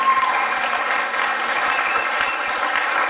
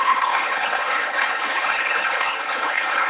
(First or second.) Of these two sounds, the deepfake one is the second